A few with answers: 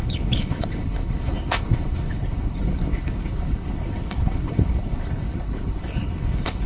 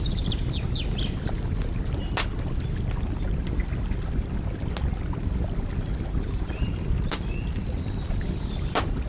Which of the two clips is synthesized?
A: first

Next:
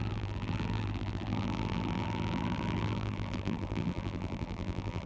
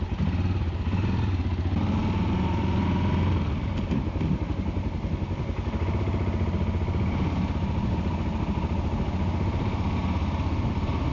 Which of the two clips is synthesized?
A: first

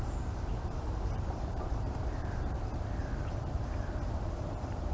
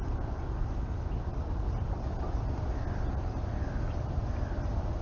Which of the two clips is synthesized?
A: first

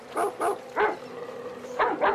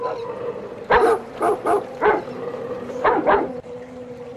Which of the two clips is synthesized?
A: second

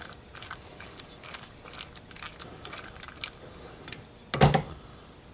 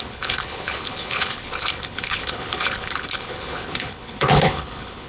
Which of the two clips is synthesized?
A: second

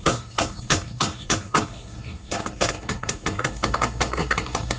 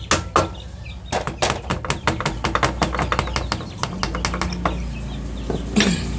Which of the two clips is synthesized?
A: first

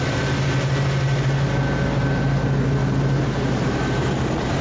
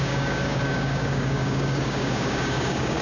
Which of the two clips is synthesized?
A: second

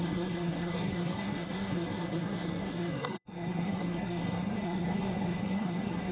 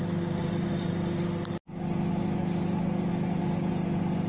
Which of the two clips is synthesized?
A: first